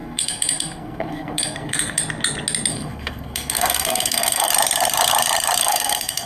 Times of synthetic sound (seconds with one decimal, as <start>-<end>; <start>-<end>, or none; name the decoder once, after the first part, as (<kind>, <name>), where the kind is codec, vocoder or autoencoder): 0.0-2.0 (codec, SNAC); 2.7-4.5; 5.6-6.3